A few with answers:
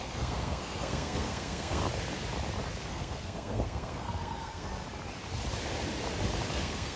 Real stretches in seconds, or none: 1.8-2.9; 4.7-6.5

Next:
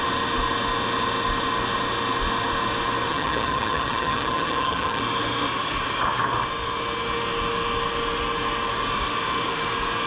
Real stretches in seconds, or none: 0.0-3.1; 5.0-10.1

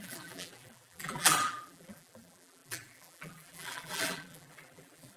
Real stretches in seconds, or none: none

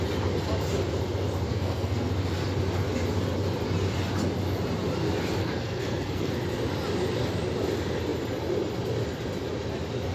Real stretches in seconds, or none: 0.0-1.5; 2.1-5.4; 6.3-10.1

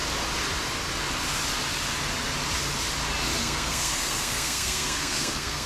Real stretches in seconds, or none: 0.0-3.4

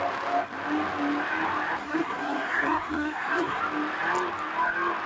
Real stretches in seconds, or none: 0.0-1.8; 3.6-5.1

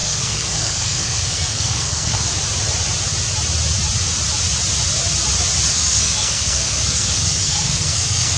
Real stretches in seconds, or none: 2.3-5.7